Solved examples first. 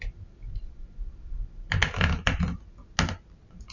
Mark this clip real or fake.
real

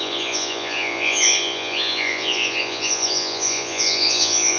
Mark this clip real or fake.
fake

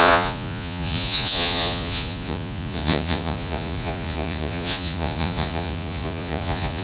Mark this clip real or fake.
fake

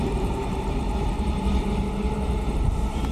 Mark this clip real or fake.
fake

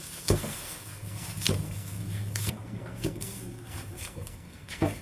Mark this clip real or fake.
fake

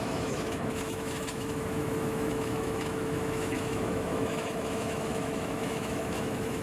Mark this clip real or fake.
fake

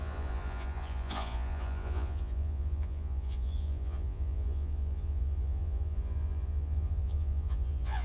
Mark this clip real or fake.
fake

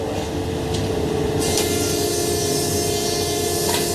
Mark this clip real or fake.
real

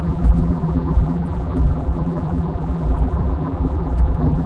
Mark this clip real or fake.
fake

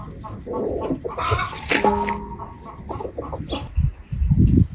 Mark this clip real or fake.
real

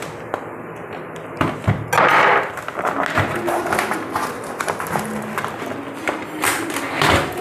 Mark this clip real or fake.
real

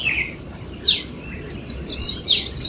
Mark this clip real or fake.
fake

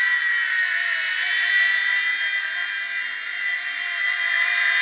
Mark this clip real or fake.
real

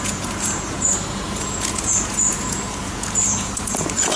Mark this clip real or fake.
fake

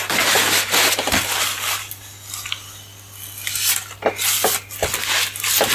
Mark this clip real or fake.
real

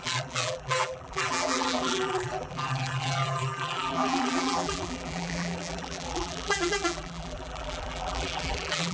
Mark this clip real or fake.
fake